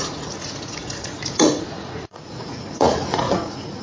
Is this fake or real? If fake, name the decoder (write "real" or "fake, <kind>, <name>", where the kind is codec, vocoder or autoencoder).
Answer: fake, vocoder, Vocos